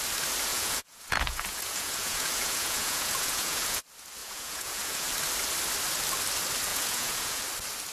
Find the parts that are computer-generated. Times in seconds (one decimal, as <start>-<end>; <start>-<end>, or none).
0.5-3.8; 4.2-5.1; 6.7-7.4